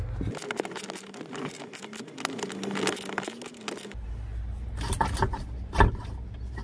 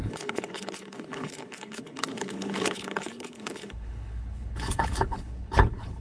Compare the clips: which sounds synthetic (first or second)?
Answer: second